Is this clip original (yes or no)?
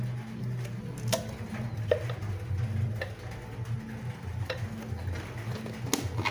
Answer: yes